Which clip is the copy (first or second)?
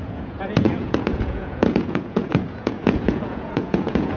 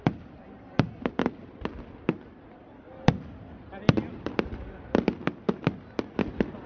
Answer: first